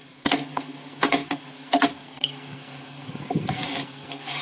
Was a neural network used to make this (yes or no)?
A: yes